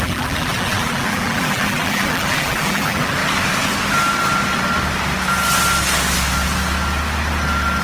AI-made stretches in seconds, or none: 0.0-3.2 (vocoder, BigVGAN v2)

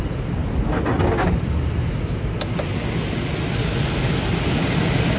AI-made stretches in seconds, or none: none

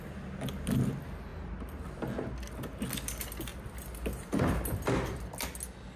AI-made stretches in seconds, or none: none

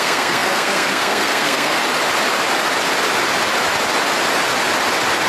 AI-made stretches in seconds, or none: 0.0-1.8 (codec, SNAC)

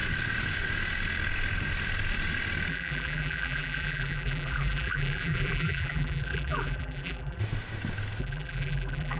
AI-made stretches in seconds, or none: 2.7-7.4 (vocoder, BigVGAN v2); 8.2-9.2

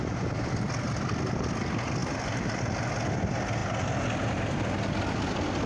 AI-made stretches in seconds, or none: 2.0-2.6 (vocoder, BigVGAN v2)

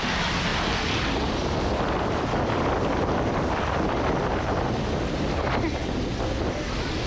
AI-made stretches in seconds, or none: none

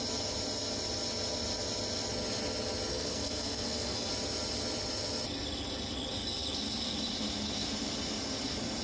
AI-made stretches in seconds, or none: 2.9-4.1 (codec, SNAC)